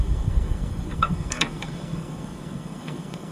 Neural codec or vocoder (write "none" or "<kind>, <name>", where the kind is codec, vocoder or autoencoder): codec, SNAC